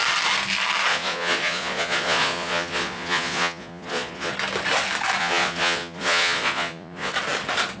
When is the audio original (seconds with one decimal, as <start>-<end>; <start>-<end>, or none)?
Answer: 0.0-0.9; 4.3-5.2; 7.1-7.8

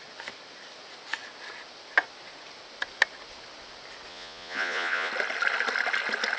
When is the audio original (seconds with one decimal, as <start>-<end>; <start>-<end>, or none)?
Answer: 0.0-4.1; 5.1-6.4